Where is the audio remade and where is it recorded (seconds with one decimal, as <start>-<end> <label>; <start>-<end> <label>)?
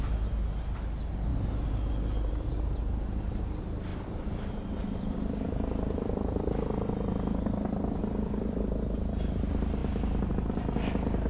0.0-3.9 recorded; 3.9-6.5 remade; 6.5-8.0 recorded; 8.0-8.8 remade; 8.8-9.8 recorded; 9.8-10.3 remade; 10.3-11.3 recorded